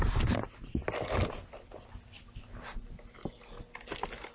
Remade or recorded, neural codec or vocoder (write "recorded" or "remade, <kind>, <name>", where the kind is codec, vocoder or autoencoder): recorded